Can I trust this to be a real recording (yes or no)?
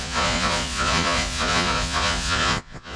no